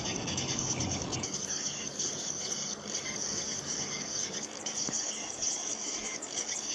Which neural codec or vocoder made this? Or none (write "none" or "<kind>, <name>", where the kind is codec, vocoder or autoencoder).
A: codec, DAC